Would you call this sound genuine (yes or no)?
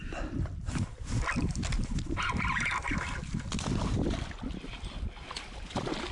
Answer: yes